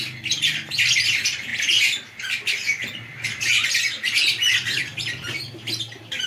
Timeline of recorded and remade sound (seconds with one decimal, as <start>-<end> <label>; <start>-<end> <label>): 0.0-6.3 recorded